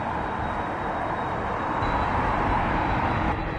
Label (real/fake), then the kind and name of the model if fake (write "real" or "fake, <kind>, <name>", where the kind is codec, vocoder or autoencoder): fake, vocoder, BigVGAN v2